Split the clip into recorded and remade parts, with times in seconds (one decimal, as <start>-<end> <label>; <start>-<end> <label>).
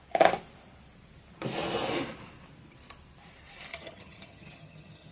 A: 0.0-3.7 recorded; 3.7-5.1 remade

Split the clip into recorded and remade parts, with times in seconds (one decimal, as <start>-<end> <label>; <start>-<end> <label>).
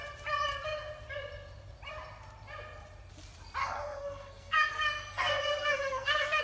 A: 0.0-3.6 recorded; 3.6-6.4 remade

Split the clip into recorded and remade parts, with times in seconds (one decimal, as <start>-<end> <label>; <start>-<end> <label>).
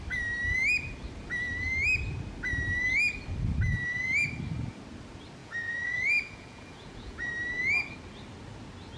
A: 0.0-5.4 recorded; 5.4-7.3 remade; 7.3-9.0 recorded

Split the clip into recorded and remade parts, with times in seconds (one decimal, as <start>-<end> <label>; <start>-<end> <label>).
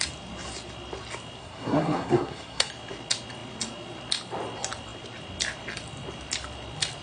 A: 0.0-1.4 recorded; 1.4-2.7 remade; 2.7-7.0 recorded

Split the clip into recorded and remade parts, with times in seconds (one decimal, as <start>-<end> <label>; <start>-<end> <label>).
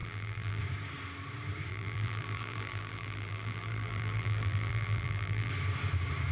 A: 0.0-0.6 remade; 0.6-1.7 recorded; 1.7-5.5 remade; 5.5-6.3 recorded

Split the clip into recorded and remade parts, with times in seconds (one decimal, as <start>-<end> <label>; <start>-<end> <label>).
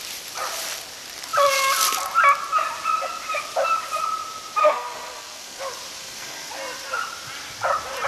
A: 0.0-4.6 recorded; 4.6-5.6 remade; 5.6-6.0 recorded; 6.0-6.5 remade; 6.5-8.1 recorded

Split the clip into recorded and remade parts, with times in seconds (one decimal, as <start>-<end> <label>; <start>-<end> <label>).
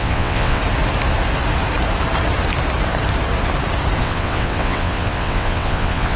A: 0.0-0.6 remade; 0.6-4.0 recorded; 4.0-6.2 remade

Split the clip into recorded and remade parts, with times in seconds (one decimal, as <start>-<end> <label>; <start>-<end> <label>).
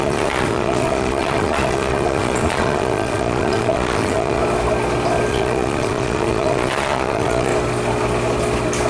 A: 0.0-4.4 remade; 4.4-5.3 recorded; 5.3-7.5 remade; 7.5-8.9 recorded